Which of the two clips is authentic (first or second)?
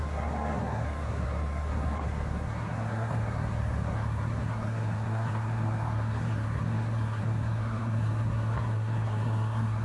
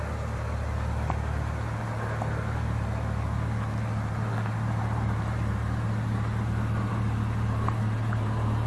second